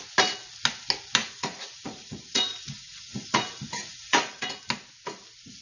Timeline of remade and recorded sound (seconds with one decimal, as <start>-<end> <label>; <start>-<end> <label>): 0.0-1.2 recorded; 1.2-4.6 remade; 4.6-5.6 recorded